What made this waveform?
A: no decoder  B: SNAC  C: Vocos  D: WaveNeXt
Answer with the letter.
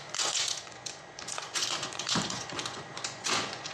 C